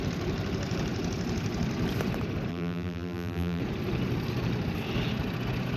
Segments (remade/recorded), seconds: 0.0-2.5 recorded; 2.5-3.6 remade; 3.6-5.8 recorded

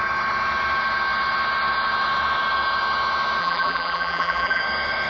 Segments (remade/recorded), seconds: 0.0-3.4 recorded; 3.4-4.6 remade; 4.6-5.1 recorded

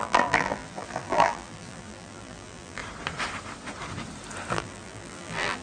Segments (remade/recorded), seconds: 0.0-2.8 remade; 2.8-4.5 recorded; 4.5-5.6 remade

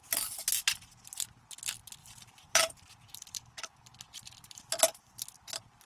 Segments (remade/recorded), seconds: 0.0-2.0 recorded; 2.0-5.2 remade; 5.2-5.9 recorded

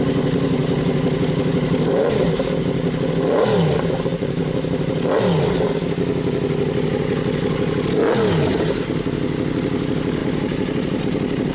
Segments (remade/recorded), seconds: 0.0-4.1 recorded; 4.1-5.1 remade; 5.1-10.2 recorded; 10.2-11.0 remade; 11.0-11.5 recorded

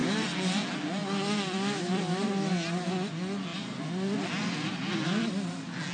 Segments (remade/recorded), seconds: 0.0-0.5 remade; 0.5-1.0 recorded; 1.0-3.1 remade; 3.1-3.5 recorded; 3.5-5.3 remade; 5.3-5.9 recorded

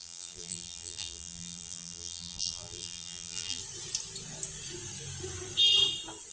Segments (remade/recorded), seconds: 0.0-3.6 remade; 3.6-6.3 recorded